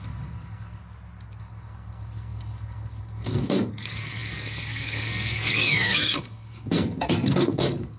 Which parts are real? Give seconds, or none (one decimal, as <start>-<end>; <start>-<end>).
0.8-1.4